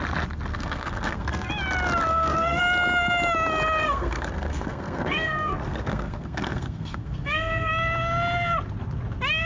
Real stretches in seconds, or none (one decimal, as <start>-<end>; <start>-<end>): 0.0-0.5; 1.5-2.1; 2.6-3.8; 7.7-9.5